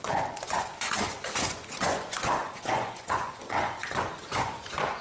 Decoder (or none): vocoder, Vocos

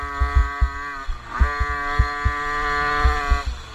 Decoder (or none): none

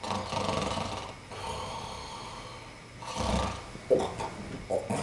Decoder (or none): none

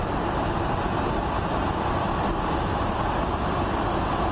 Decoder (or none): none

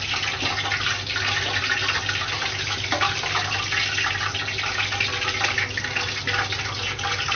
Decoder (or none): none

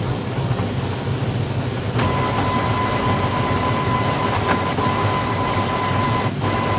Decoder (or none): none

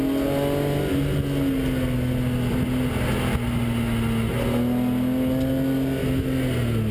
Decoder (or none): none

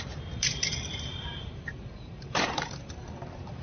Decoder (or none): vocoder, BigVGAN v2